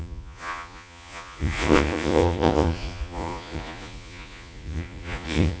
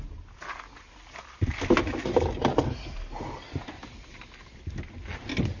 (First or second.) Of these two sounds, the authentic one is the second